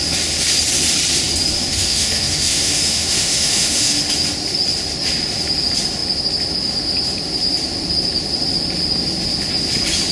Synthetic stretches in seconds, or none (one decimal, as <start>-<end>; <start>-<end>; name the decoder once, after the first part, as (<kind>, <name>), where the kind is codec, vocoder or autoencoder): 1.7-4.0 (autoencoder, DAC-VAE)